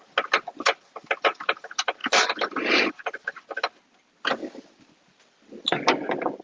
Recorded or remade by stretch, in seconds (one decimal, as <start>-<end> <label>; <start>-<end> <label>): 0.0-6.4 recorded